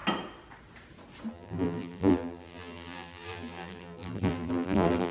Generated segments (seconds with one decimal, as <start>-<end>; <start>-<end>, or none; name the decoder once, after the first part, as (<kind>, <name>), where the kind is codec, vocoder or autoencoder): 1.3-5.1 (vocoder, BigVGAN v2)